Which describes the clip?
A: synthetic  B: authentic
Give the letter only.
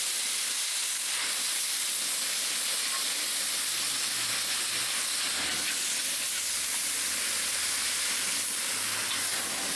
B